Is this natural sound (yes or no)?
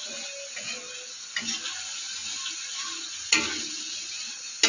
yes